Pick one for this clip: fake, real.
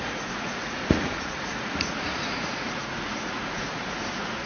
fake